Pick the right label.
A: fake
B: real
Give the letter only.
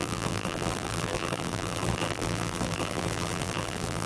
A